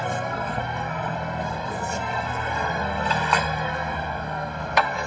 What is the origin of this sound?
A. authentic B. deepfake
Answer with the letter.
B